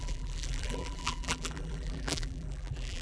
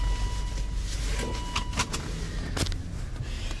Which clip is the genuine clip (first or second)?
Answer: second